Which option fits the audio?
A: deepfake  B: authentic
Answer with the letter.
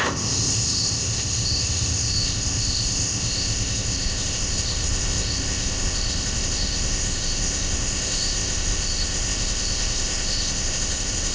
A